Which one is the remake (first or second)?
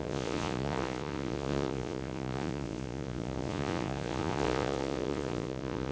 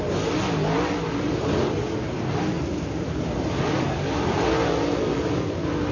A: first